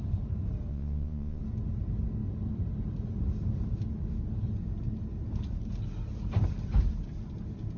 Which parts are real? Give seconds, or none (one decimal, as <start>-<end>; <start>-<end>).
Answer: 0.0-0.7; 1.4-7.8